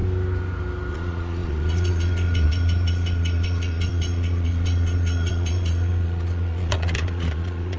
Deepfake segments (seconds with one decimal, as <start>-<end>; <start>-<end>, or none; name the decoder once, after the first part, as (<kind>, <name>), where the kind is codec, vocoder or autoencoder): 0.9-7.8 (vocoder, Vocos)